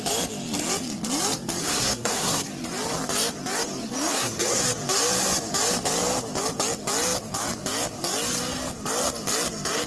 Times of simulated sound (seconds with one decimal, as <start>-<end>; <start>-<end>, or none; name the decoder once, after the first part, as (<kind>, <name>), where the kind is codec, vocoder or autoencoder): 1.6-2.5 (codec, SNAC); 4.1-4.6

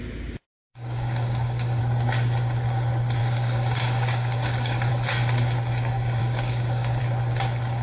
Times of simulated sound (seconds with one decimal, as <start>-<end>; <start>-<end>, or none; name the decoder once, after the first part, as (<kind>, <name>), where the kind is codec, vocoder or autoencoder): 0.5-1.8 (codec, DAC); 3.2-4.9; 6.2-7.0

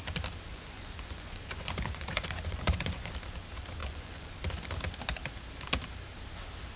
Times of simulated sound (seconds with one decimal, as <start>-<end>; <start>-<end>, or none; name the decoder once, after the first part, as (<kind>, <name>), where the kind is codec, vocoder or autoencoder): 0.5-3.1 (vocoder, Vocos); 3.8-4.3

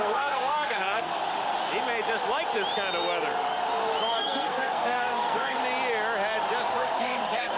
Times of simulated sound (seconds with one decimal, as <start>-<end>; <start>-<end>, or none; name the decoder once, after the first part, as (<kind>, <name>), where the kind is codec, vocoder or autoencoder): 0.0-1.2 (codec, SNAC); 4.1-5.6; 6.7-7.6